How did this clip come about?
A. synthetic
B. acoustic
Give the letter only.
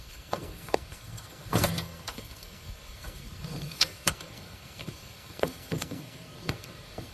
A